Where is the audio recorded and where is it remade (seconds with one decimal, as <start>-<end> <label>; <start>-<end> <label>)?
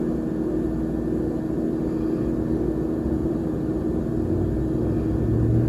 0.0-3.2 recorded; 3.2-3.8 remade; 3.8-5.7 recorded